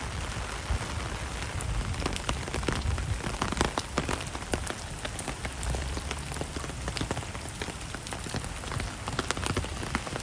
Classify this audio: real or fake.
real